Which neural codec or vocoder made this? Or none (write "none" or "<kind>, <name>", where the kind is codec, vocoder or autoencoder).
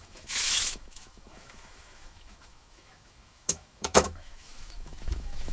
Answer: autoencoder, DAC-VAE